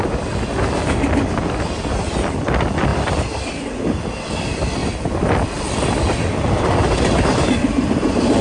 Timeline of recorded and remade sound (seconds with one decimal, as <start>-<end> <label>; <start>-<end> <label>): 0.0-8.4 remade